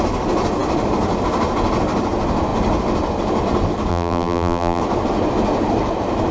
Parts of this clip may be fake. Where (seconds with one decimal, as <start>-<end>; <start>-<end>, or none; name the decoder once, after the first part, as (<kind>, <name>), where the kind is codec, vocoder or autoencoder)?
3.9-4.8 (vocoder, BigVGAN v2)